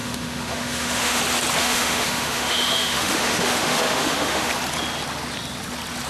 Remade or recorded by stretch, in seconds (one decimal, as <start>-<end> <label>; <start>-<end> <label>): 0.0-1.2 remade; 1.2-1.6 recorded; 1.6-4.5 remade; 4.5-6.1 recorded